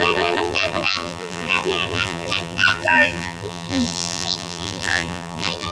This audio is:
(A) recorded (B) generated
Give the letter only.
B